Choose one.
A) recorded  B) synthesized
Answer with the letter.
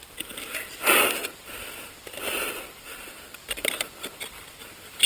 B